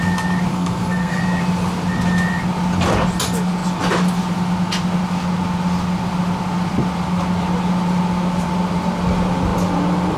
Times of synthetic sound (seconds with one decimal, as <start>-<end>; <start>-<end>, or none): 0.5-1.2